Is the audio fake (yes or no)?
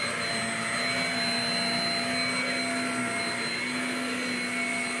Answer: no